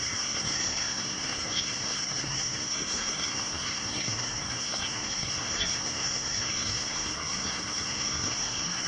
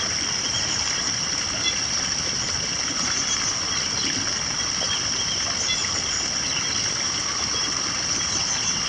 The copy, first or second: first